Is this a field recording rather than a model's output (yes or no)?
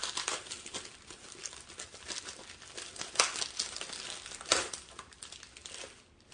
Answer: yes